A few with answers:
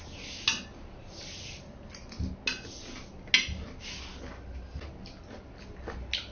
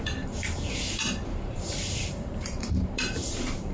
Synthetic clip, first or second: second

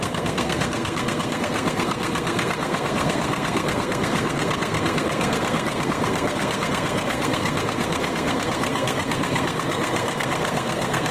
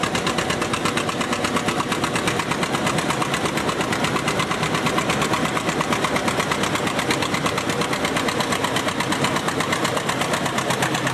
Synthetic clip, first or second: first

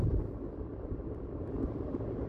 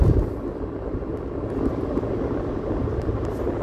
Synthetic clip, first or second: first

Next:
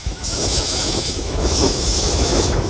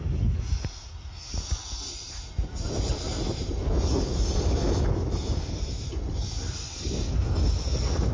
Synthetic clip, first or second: first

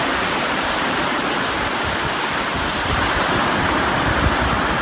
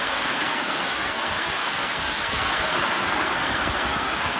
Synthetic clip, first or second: second